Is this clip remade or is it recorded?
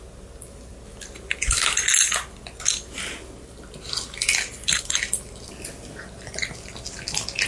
recorded